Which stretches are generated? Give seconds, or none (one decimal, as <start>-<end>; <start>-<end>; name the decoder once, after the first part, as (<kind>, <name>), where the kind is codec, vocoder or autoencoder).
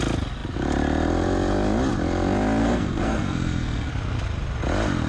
2.6-3.9 (codec, SNAC)